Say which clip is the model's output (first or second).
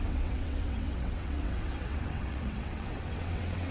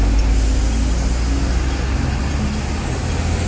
first